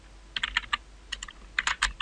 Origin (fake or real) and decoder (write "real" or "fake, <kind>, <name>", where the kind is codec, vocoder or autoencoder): real